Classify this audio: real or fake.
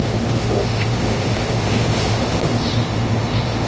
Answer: fake